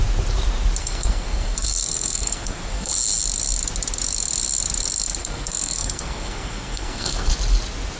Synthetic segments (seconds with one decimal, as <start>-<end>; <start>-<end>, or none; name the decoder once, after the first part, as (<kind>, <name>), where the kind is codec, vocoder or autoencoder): 0.8-2.9 (codec, SNAC); 5.2-7.3